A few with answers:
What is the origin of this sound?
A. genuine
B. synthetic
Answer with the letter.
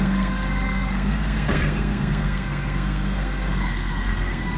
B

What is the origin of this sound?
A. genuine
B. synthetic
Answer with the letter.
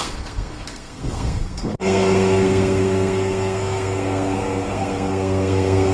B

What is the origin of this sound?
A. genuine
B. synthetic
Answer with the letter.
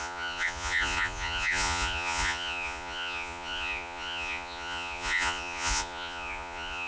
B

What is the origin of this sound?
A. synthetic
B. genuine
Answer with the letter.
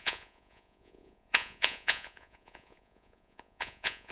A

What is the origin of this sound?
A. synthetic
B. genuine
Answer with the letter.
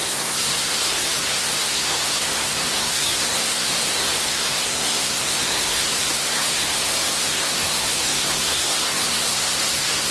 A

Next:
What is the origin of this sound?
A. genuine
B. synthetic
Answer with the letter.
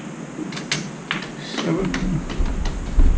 A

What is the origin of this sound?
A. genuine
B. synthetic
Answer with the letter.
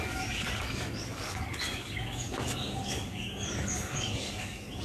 B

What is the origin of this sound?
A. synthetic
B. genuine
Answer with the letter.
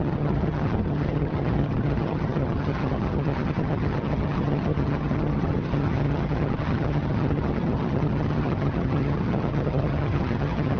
A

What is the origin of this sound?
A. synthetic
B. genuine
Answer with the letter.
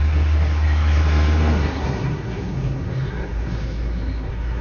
A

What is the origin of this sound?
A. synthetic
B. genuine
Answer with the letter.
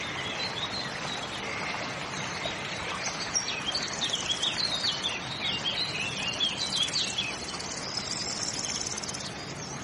B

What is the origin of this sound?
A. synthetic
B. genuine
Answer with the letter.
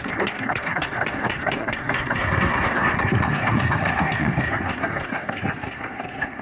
A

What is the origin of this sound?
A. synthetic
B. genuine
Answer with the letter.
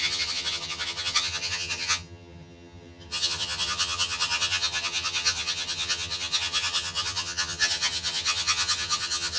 A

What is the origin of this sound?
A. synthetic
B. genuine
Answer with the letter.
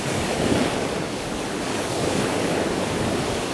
A